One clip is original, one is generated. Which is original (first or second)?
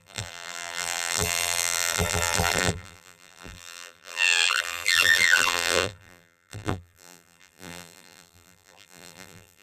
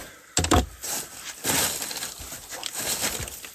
second